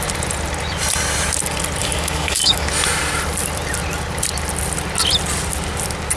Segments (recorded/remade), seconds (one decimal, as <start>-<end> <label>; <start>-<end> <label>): 0.0-1.8 recorded; 1.8-2.7 remade; 2.7-6.2 recorded